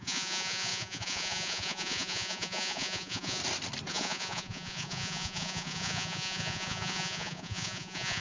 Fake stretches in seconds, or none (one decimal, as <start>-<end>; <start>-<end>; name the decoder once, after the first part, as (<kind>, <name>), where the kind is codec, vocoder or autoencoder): 0.0-3.4 (vocoder, Vocos); 3.9-8.2